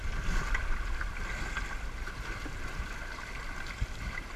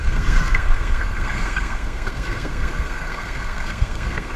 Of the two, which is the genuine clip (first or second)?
first